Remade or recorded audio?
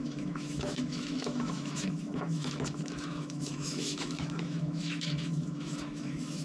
remade